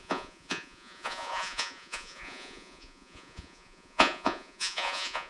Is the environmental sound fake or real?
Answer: fake